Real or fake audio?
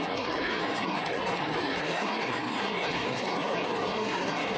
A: fake